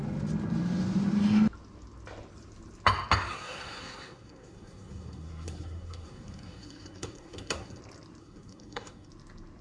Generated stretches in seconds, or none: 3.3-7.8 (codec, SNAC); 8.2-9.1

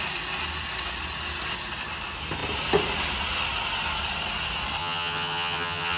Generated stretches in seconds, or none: 4.8-6.0 (vocoder, HiFi-GAN)